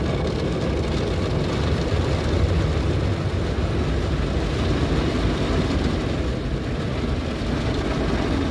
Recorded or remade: recorded